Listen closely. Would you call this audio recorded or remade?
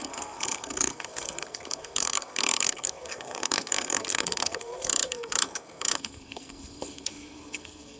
remade